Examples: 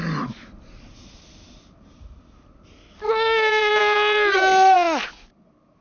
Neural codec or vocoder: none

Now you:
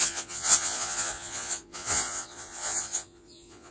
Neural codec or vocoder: vocoder, Vocos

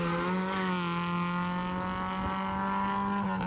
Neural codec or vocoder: none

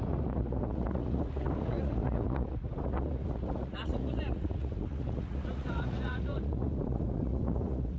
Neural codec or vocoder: vocoder, Vocos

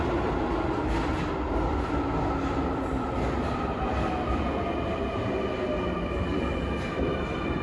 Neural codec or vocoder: none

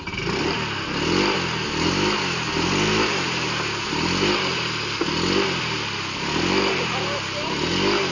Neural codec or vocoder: none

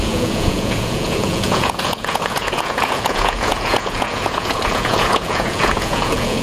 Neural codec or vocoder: vocoder, Vocos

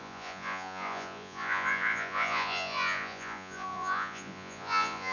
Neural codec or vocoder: vocoder, Vocos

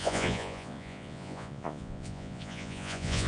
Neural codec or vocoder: vocoder, Vocos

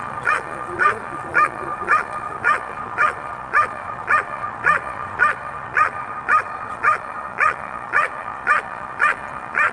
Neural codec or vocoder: vocoder, Vocos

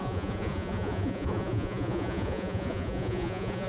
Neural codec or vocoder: vocoder, Vocos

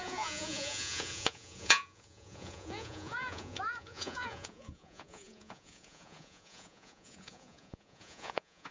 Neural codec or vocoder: vocoder, Vocos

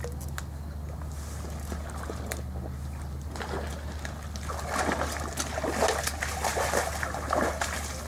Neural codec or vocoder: none